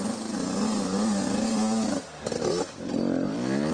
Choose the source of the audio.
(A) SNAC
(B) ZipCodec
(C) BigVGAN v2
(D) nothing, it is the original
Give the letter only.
D